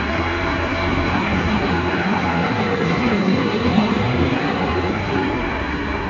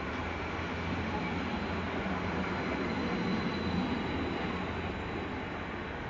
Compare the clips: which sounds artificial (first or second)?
first